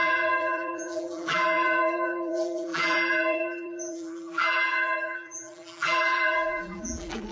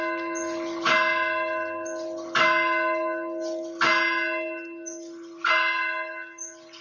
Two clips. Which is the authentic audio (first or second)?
second